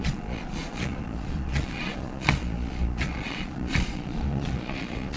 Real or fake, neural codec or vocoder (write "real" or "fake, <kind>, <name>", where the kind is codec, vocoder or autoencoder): fake, vocoder, Vocos